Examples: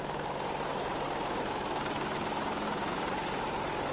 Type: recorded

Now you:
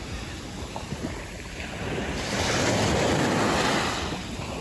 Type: recorded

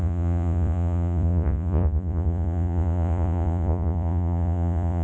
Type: remade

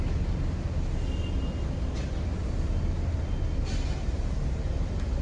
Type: recorded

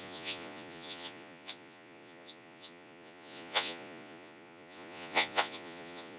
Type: remade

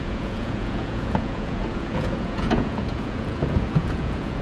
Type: remade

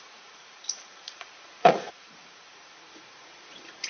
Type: remade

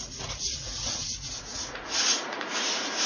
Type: remade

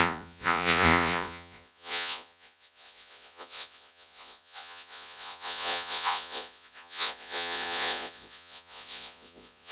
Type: remade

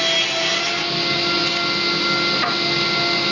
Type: recorded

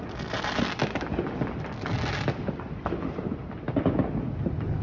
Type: recorded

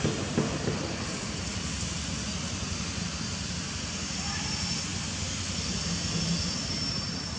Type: recorded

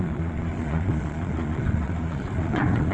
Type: remade